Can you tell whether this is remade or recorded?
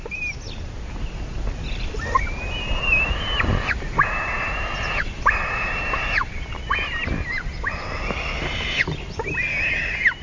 recorded